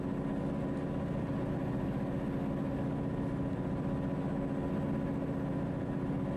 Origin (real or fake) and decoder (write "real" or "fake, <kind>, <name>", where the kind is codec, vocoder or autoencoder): real